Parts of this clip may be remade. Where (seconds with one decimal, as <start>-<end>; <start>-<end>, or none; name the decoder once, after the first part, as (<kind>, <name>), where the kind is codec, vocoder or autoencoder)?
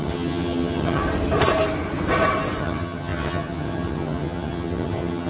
0.0-1.0 (vocoder, HiFi-GAN); 2.6-5.3